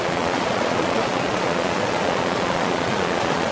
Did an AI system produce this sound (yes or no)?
yes